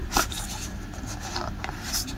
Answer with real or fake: fake